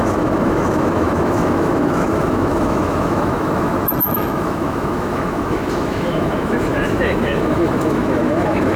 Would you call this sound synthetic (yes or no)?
yes